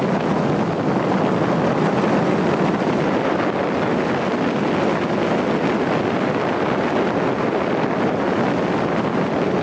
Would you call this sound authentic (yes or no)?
yes